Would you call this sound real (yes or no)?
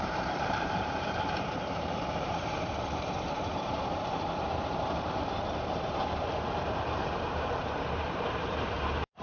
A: no